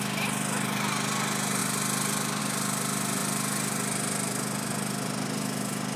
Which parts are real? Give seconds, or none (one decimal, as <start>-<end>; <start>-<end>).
0.0-6.0